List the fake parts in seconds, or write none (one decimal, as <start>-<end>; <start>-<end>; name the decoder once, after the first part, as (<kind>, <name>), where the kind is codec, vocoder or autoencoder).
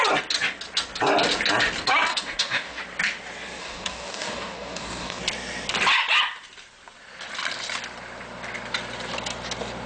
2.1-2.8 (codec, DAC); 3.6-5.2